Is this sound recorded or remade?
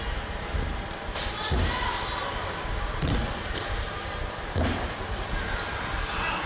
recorded